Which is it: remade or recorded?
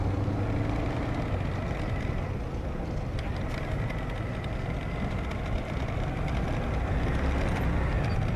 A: recorded